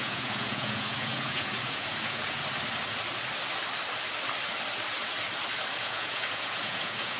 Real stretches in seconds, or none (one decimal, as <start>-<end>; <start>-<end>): 2.4-5.8